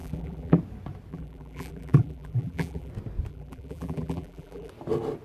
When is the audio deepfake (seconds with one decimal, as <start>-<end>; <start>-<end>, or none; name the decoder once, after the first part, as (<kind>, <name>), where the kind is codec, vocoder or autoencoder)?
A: 0.0-0.6 (vocoder, BigVGAN v2); 1.1-2.9; 3.3-4.7